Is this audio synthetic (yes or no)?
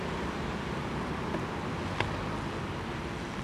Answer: no